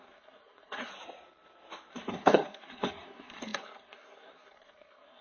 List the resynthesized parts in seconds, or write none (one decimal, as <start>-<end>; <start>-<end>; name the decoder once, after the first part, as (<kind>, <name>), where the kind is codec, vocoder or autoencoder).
0.0-0.9 (codec, SNAC); 1.9-5.2

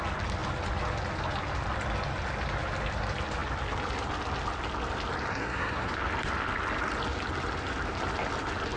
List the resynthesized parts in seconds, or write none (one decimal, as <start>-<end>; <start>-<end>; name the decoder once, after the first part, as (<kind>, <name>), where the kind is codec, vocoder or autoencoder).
5.3-5.9 (codec, SNAC)

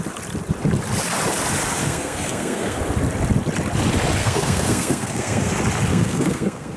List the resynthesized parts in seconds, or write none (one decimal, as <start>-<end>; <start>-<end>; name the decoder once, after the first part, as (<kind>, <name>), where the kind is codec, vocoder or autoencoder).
1.8-2.8 (codec, SNAC); 4.2-5.5; 5.9-6.8

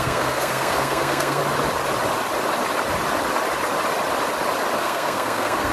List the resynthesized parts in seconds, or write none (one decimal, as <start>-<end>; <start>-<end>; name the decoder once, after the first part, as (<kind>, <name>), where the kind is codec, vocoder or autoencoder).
0.0-1.4 (codec, SNAC); 4.8-5.7

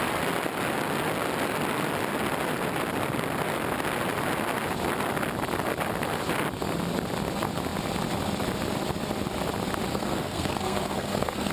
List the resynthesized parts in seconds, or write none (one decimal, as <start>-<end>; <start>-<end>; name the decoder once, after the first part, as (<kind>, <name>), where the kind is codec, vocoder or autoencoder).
9.9-11.5 (codec, SNAC)